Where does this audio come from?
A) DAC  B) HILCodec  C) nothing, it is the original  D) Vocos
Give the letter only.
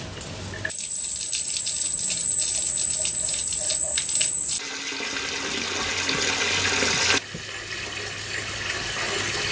C